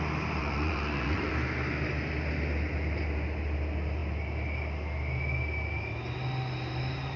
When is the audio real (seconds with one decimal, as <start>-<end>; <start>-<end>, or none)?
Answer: 0.0-0.4; 1.3-7.2